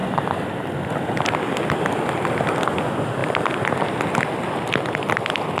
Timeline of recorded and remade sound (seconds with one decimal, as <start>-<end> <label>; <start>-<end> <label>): 0.0-5.6 recorded